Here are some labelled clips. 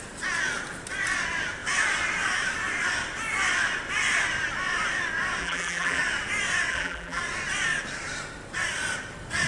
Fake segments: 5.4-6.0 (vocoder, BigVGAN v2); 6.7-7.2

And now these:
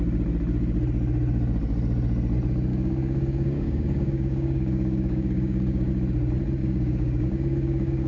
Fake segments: 2.7-5.9 (codec, DAC); 6.6-8.1

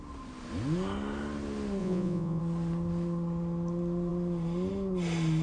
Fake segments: 1.8-2.4 (vocoder, Vocos)

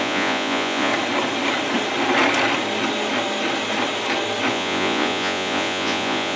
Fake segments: 0.0-0.9 (vocoder, Vocos); 4.5-6.4

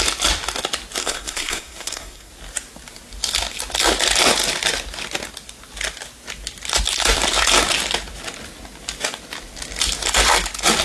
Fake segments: 1.0-2.3 (codec, SNAC)

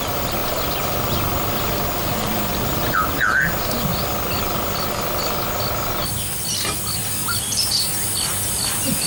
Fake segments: none